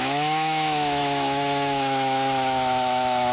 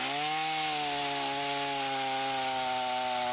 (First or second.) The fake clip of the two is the first